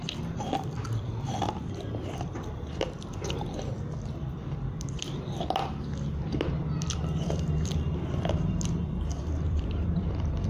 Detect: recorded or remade remade